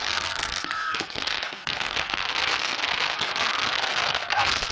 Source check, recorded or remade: remade